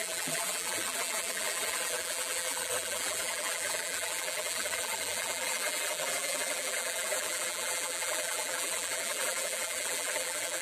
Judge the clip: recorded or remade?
remade